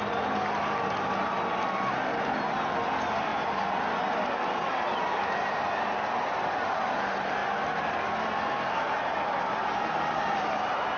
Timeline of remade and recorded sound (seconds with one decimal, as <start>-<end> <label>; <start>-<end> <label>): 0.0-11.0 recorded